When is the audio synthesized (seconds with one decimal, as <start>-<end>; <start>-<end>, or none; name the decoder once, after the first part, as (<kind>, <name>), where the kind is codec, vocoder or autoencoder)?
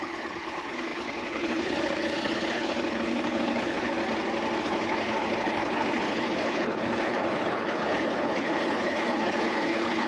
0.0-4.0 (codec, HILCodec); 4.6-10.1